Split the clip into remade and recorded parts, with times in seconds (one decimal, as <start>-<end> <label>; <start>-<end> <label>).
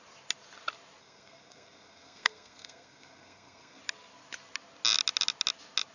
0.0-1.0 recorded; 1.0-3.8 remade; 3.8-5.9 recorded